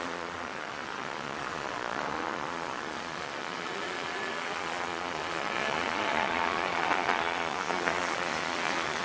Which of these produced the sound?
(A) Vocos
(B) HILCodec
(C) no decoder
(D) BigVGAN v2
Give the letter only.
A